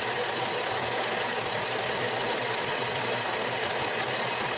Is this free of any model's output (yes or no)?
yes